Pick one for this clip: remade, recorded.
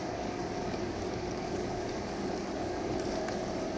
remade